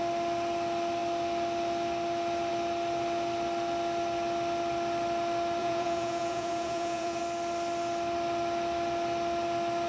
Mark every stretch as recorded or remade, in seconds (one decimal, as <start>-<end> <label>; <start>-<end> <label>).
0.0-5.6 recorded; 5.6-7.2 remade; 7.2-9.9 recorded